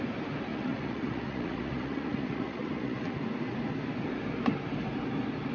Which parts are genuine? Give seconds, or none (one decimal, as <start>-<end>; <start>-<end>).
0.0-0.5; 3.2-5.5